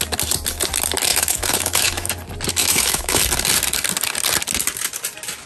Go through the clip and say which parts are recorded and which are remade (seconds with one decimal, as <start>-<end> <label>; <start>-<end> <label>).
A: 0.0-1.1 recorded; 1.1-2.1 remade; 2.1-2.6 recorded; 2.6-3.2 remade; 3.2-5.5 recorded